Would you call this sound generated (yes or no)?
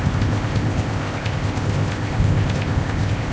yes